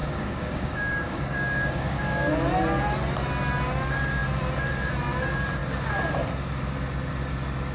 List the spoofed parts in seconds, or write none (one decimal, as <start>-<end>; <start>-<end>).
0.0-2.3